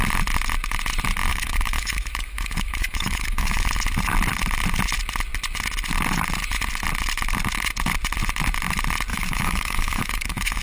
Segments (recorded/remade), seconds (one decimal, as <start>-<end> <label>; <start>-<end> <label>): 0.0-1.3 recorded; 1.3-3.7 remade; 3.7-9.1 recorded; 9.1-10.6 remade

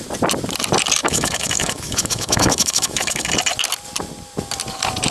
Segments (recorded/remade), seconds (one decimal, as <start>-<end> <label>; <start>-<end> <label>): 0.0-1.0 recorded; 1.0-3.3 remade; 3.3-5.1 recorded

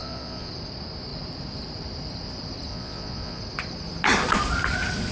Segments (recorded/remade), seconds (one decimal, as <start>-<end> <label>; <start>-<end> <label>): 0.0-0.5 remade; 0.5-2.7 recorded; 2.7-3.4 remade; 3.4-5.1 recorded

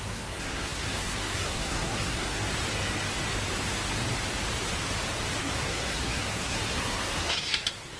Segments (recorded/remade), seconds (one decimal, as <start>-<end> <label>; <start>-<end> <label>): 0.0-2.5 remade; 2.5-5.4 recorded; 5.4-8.0 remade

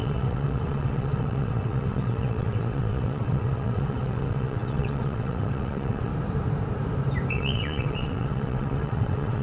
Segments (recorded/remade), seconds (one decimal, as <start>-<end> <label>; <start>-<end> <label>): 0.0-6.1 remade; 6.1-7.3 recorded; 7.3-9.4 remade

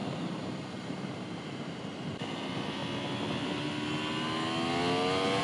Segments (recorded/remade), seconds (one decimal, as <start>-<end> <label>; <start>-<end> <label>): 0.0-2.8 remade; 2.8-5.4 recorded